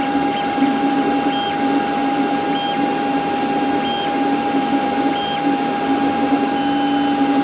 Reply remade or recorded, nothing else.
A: recorded